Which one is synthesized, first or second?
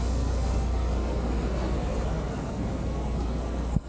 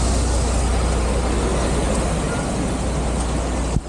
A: first